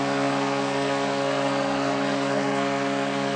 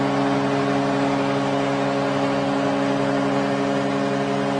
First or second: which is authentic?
second